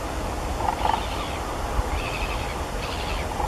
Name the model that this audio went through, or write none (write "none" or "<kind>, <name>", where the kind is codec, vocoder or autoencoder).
none